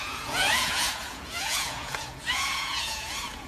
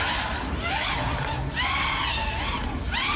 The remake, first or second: first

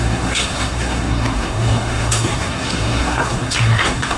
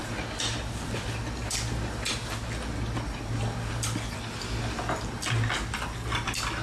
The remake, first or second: first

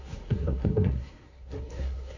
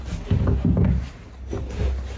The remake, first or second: first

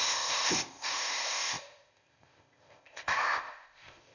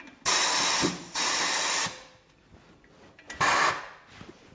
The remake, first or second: first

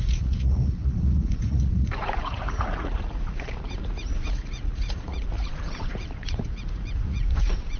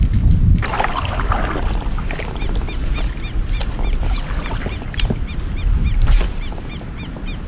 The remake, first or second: first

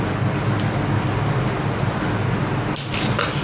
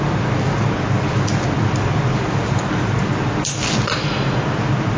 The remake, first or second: second